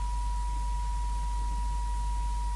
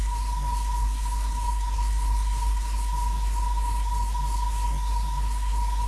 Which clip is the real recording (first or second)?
first